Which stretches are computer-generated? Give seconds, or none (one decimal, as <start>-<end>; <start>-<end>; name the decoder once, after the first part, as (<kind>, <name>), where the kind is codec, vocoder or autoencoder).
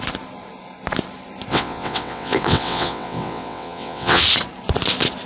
1.5-4.2 (vocoder, WaveNeXt)